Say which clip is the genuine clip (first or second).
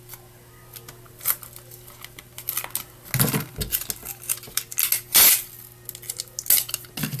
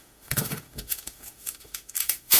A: first